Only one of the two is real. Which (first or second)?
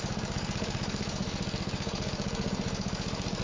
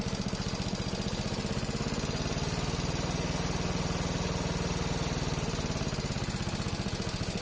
second